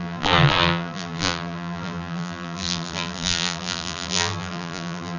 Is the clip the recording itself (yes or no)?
no